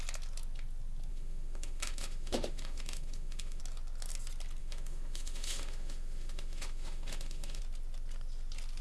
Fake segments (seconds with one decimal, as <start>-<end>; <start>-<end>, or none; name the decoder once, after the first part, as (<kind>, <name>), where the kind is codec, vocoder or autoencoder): 1.1-3.6 (autoencoder, DAC-VAE); 4.6-7.6